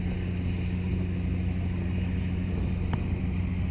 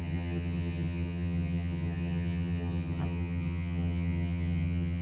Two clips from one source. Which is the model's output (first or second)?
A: second